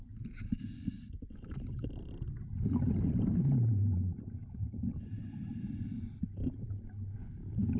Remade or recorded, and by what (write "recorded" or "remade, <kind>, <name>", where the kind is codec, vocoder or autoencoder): recorded